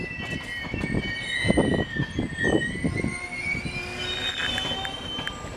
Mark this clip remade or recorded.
recorded